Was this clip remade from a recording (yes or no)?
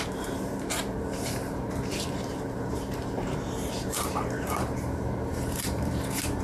yes